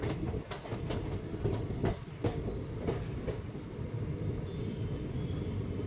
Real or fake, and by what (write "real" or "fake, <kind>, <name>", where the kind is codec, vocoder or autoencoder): real